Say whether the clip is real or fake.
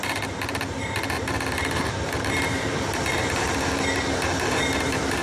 fake